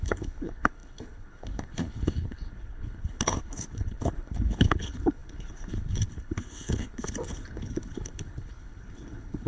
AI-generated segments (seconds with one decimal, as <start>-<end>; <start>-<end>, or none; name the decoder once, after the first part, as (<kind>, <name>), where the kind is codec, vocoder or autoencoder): 0.0-9.5 (codec, HILCodec)